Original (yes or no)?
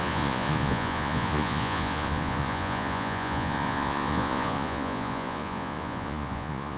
no